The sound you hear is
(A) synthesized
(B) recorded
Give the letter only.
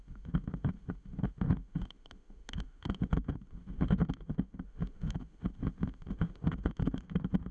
A